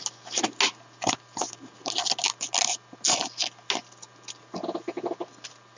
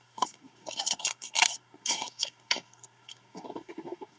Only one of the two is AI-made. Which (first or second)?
second